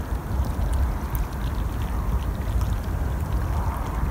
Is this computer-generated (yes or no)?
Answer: no